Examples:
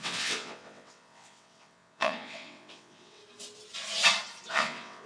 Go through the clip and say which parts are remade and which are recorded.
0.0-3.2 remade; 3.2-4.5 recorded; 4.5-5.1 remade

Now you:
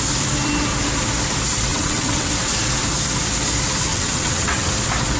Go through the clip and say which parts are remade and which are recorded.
0.0-1.7 recorded; 1.7-2.3 remade; 2.3-3.9 recorded; 3.9-4.7 remade; 4.7-5.2 recorded